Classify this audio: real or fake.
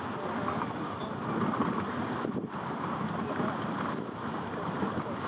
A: real